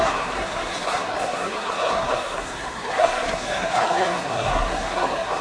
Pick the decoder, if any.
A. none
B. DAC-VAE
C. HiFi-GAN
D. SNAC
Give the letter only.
D